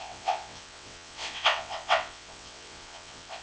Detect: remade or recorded remade